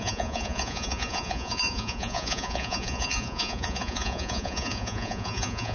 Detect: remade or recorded remade